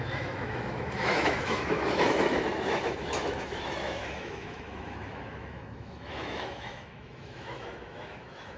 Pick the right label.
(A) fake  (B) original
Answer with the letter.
A